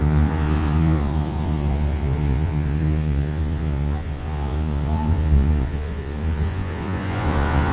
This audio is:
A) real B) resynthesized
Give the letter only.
B